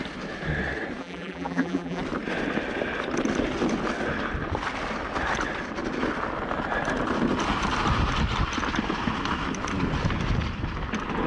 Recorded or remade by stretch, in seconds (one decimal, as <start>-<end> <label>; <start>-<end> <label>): 0.0-1.0 recorded; 1.0-2.0 remade; 2.0-11.3 recorded